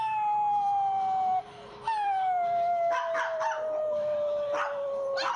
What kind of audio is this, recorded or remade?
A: recorded